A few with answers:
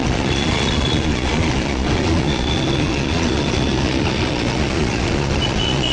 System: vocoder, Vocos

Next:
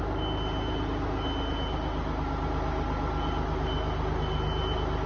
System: none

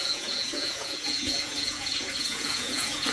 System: vocoder, Vocos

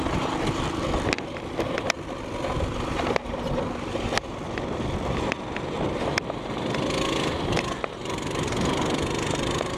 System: none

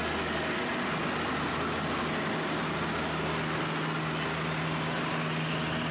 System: none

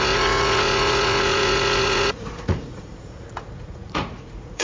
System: vocoder, Vocos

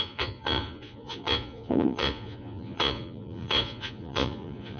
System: vocoder, Vocos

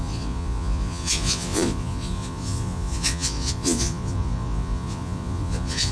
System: vocoder, Vocos